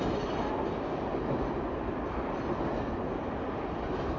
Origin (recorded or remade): recorded